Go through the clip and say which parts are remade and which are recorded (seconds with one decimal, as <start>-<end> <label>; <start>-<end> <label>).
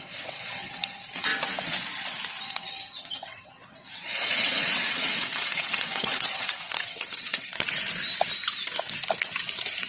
0.0-1.3 remade; 1.3-2.4 recorded; 2.4-7.5 remade; 7.5-9.9 recorded